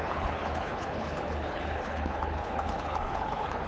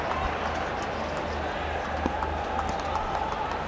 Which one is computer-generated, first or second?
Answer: first